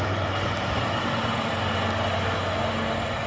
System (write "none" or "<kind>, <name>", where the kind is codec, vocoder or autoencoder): none